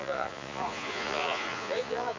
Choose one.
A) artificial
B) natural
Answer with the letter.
A